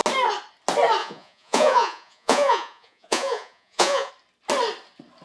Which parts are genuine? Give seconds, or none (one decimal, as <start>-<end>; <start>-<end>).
0.0-1.0; 4.1-5.2